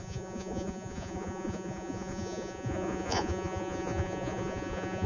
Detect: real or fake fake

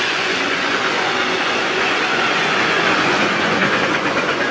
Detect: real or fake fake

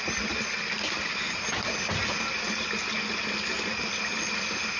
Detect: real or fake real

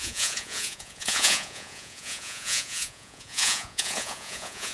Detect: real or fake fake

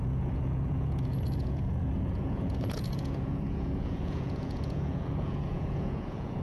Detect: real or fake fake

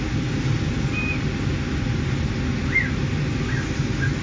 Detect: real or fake real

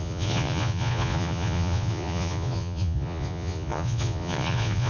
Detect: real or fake fake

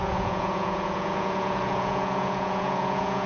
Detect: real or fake fake